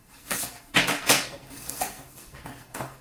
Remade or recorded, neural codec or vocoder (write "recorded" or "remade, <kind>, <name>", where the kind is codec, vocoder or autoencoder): remade, codec, SNAC